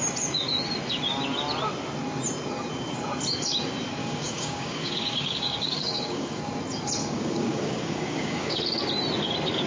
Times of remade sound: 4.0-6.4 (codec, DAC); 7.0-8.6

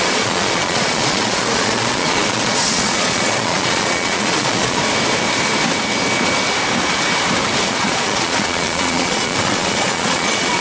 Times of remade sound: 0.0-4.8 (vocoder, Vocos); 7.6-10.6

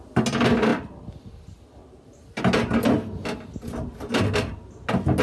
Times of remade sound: none

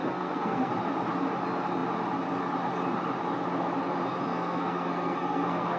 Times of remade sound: 0.0-0.7 (codec, SNAC); 4.3-5.8

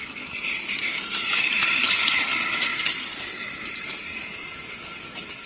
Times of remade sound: 0.0-2.3 (vocoder, BigVGAN v2); 3.7-5.5

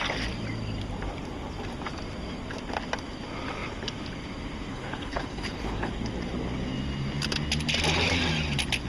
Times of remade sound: 4.7-5.9 (codec, HILCodec)